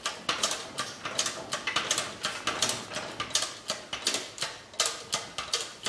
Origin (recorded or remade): recorded